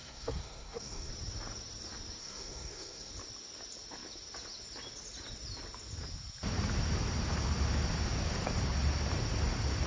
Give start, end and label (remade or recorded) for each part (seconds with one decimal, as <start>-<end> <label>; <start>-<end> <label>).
0.0-1.1 remade; 1.1-2.2 recorded; 2.2-3.1 remade; 3.1-9.9 recorded